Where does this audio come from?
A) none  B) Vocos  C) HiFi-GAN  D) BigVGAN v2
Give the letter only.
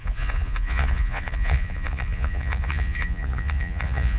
B